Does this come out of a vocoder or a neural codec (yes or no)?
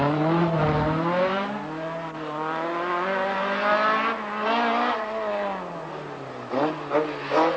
no